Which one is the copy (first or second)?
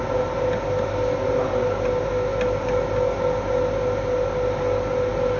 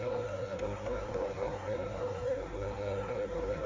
second